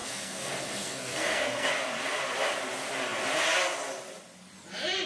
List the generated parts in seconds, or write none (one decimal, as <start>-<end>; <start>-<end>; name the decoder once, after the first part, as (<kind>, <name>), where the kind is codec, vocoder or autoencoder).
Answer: 0.0-1.7 (codec, SNAC)